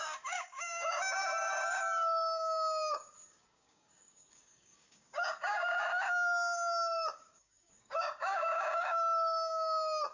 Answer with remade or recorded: remade